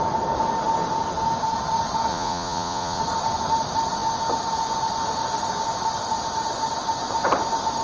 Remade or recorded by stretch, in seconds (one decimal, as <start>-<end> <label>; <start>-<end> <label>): 0.0-2.1 recorded; 2.1-3.0 remade; 3.0-7.8 recorded